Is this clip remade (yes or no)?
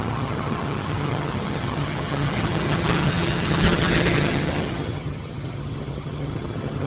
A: yes